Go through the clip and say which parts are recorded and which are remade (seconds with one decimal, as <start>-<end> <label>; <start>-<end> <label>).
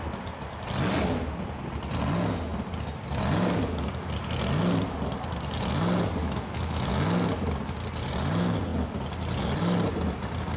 0.0-6.2 recorded; 6.2-6.9 remade; 6.9-10.6 recorded